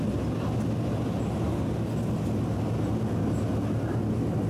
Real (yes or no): yes